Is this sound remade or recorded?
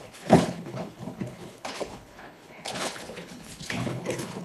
remade